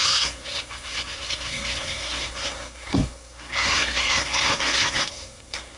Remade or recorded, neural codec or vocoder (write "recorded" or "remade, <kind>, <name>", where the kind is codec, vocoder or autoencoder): remade, codec, SNAC